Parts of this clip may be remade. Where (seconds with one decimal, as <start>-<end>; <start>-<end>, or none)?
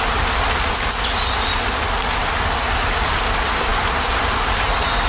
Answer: none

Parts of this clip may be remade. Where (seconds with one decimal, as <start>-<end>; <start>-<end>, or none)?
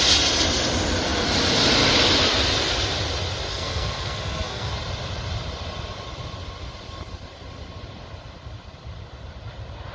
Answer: 3.5-4.7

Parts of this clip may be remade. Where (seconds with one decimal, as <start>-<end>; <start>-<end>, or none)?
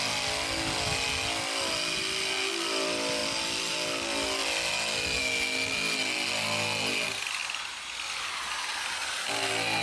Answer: none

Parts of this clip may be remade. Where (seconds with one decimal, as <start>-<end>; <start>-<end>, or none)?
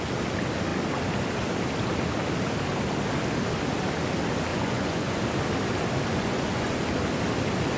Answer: 4.5-5.2; 6.1-6.8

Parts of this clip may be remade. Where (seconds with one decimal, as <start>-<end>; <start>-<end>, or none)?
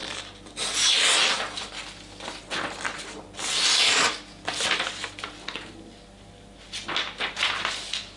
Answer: none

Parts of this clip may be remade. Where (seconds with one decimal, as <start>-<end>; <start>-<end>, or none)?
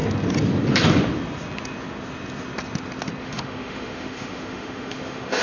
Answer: 3.2-5.4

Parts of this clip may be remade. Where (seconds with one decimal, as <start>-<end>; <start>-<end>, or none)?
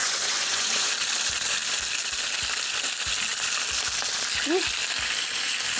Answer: 0.0-0.9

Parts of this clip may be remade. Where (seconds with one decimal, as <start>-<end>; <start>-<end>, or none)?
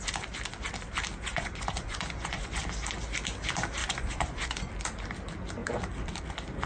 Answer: 1.3-2.6; 3.8-4.7